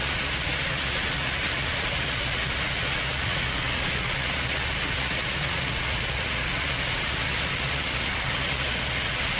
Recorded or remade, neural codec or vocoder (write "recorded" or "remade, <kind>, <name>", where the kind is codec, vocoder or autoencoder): remade, vocoder, Vocos